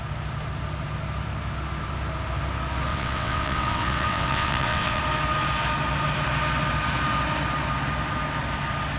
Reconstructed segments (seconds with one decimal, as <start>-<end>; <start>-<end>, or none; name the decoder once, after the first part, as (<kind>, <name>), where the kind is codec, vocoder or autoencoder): 2.9-5.0 (vocoder, WaveNeXt)